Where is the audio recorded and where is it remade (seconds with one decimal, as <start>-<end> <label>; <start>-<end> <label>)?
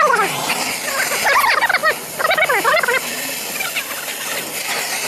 0.0-5.1 recorded